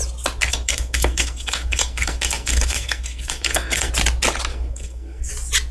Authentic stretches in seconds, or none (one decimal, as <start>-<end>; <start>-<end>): 0.0-0.5; 3.9-4.5; 5.3-5.7